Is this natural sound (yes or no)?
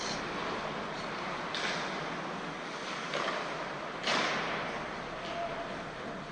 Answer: yes